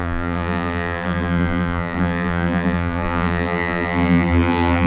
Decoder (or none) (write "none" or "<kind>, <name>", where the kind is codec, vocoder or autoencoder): vocoder, BigVGAN v2